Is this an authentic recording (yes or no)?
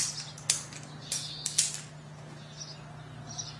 yes